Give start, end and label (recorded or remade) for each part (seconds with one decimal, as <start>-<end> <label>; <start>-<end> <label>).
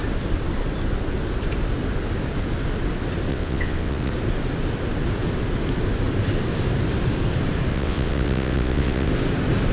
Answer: 0.0-3.3 recorded; 3.3-4.1 remade; 4.1-7.7 recorded; 7.7-9.1 remade; 9.1-9.7 recorded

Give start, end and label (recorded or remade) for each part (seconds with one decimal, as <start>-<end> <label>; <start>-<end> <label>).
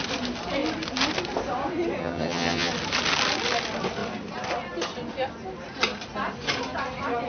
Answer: 0.0-2.0 recorded; 2.0-2.7 remade; 2.7-7.3 recorded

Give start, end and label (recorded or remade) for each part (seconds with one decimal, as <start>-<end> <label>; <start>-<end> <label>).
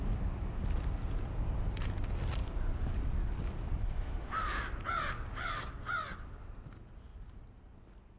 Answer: 0.0-3.8 recorded; 3.8-4.6 remade; 4.6-8.2 recorded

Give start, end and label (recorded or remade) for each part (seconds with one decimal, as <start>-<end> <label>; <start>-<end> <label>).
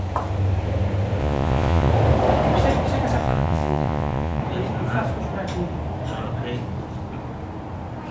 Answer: 0.0-1.2 recorded; 1.2-1.9 remade; 1.9-3.2 recorded; 3.2-4.4 remade; 4.4-8.1 recorded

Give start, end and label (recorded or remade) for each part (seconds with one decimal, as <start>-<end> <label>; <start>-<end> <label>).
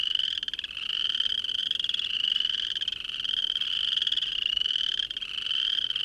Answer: 0.0-6.0 recorded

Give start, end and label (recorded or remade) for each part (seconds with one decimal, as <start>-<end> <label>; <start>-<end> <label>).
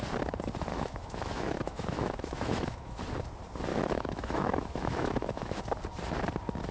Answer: 0.0-0.7 recorded; 0.7-3.0 remade; 3.0-3.7 recorded; 3.7-5.6 remade; 5.6-6.7 recorded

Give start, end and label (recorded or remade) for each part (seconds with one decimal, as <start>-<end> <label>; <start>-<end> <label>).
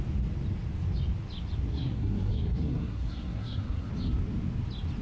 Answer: 0.0-1.7 recorded; 1.7-3.9 remade; 3.9-5.0 recorded